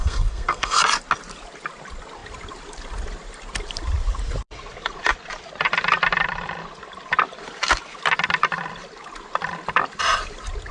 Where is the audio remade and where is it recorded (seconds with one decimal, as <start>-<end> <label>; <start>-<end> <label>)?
0.0-0.8 remade; 0.8-10.7 recorded